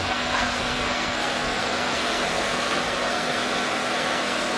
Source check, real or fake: fake